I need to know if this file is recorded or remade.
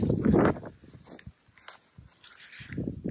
recorded